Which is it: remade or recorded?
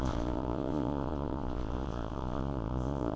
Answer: remade